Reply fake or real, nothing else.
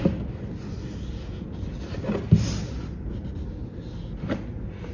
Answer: real